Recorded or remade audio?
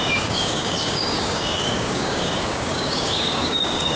remade